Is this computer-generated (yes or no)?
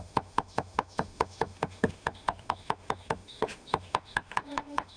yes